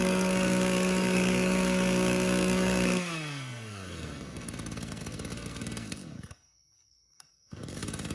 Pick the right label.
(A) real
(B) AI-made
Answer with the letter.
B